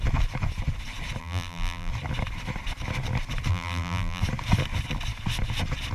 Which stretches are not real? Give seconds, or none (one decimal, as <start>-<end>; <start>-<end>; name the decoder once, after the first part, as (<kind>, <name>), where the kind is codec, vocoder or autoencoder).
1.2-1.9 (vocoder, BigVGAN v2); 3.5-4.2